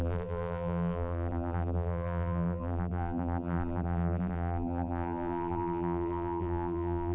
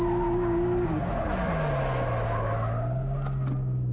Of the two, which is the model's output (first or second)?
first